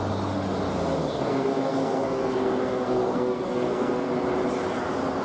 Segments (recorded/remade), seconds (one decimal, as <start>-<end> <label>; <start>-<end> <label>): 0.0-1.0 recorded; 1.0-4.1 remade; 4.1-5.2 recorded